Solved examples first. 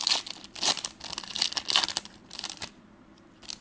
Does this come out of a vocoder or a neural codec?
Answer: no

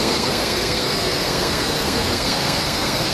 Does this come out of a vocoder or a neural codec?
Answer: yes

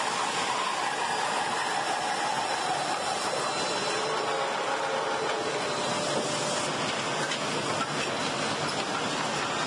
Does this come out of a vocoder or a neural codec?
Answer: no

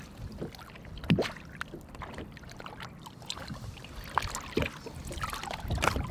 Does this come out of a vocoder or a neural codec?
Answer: no